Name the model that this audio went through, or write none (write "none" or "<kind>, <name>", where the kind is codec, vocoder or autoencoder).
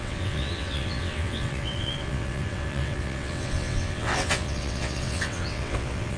vocoder, WaveNeXt